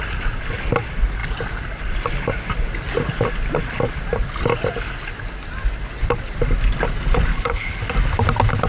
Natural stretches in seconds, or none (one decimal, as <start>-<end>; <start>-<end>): 0.0-7.3; 7.8-8.7